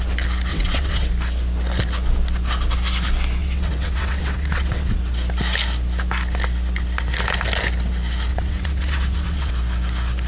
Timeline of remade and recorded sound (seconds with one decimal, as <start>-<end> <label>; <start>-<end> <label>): 0.0-0.5 recorded; 0.5-1.1 remade; 1.1-3.4 recorded; 3.4-5.0 remade; 5.0-8.3 recorded; 8.3-9.5 remade; 9.5-10.3 recorded